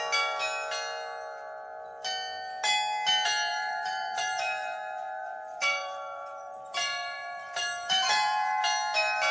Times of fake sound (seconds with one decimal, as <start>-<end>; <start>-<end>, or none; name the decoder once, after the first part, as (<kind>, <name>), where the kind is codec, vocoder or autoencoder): 3.5-8.6 (vocoder, BigVGAN v2)